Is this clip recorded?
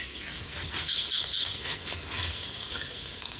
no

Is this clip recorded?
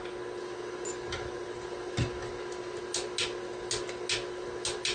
yes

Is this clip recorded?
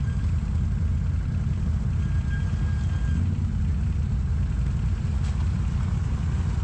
yes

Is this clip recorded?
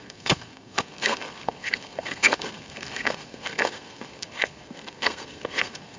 no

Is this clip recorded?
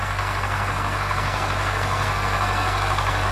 no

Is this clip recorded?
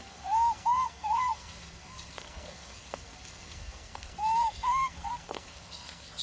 no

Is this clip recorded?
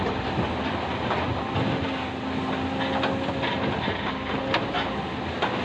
yes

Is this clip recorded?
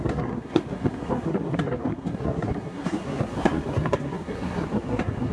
no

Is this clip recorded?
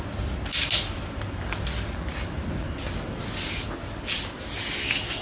yes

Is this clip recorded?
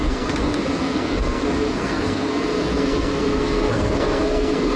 no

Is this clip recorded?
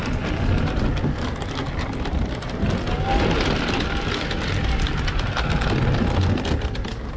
yes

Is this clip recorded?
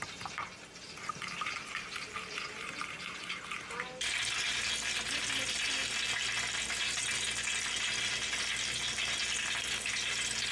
yes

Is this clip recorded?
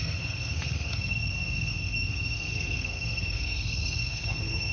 no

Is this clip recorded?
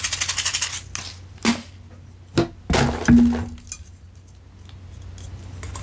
yes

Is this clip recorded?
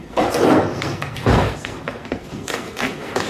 no